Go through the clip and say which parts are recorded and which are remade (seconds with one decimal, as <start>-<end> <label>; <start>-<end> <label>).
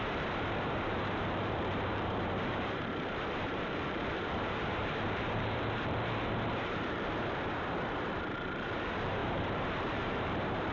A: 0.0-10.7 remade